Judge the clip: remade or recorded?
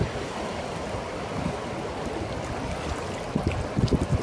recorded